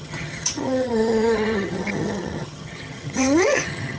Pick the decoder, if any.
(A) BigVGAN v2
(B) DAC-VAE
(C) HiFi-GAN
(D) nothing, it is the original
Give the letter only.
C